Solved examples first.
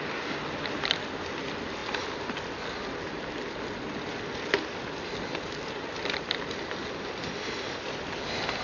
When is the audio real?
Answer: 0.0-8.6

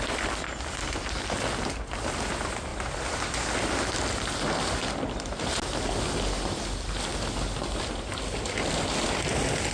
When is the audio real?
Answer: 0.0-9.7

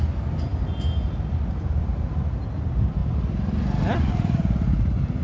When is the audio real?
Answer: 0.0-5.2

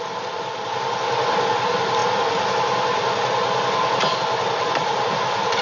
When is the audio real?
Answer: 0.0-5.6

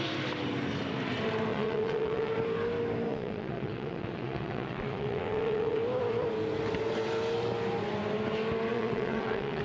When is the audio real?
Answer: 0.0-1.5; 2.3-3.1; 5.8-8.7